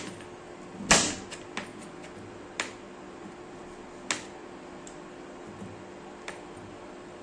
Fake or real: real